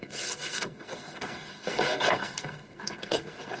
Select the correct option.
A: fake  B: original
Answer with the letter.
A